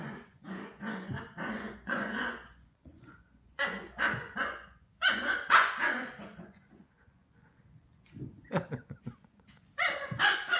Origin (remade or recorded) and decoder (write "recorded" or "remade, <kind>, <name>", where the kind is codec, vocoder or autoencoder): remade, vocoder, Vocos